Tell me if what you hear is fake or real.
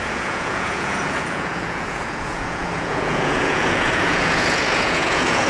fake